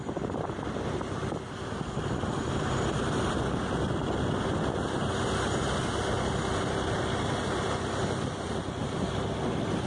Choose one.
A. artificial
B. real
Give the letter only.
B